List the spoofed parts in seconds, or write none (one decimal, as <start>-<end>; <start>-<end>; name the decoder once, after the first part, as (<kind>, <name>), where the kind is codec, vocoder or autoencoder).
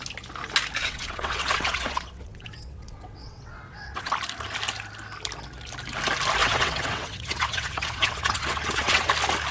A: 0.8-4.1 (vocoder, WaveNeXt); 6.4-9.1